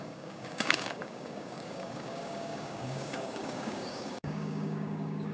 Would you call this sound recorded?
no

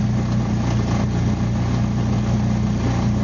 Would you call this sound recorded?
yes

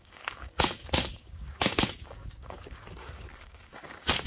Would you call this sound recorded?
no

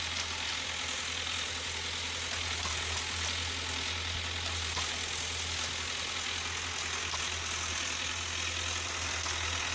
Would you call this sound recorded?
yes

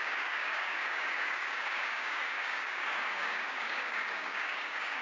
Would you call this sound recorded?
no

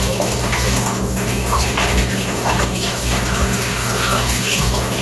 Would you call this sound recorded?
no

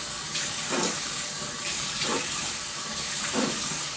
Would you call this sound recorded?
no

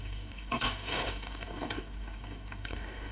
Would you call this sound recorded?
no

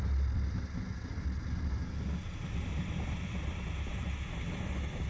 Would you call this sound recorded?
yes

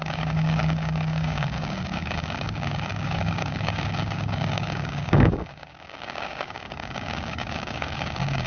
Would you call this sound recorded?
no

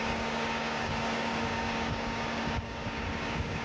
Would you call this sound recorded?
no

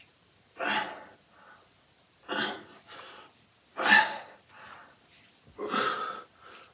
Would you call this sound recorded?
yes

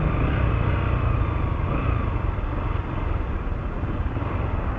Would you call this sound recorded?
yes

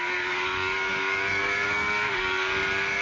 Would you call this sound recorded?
no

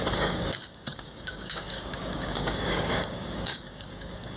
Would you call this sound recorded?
no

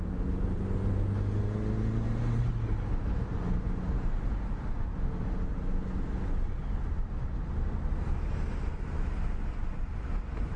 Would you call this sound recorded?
yes